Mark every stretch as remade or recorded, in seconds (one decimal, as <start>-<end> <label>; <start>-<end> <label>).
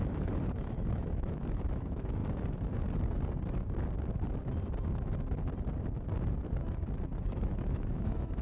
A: 0.0-2.2 remade; 2.2-7.2 recorded; 7.2-8.4 remade